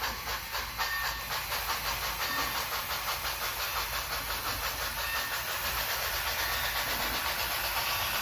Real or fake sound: real